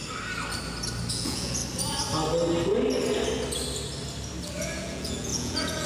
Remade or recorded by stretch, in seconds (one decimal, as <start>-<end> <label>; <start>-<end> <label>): 0.0-1.1 recorded; 1.1-1.6 remade; 1.6-4.8 recorded; 4.8-5.9 remade